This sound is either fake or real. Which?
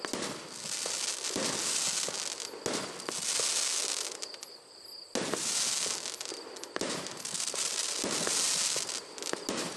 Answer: real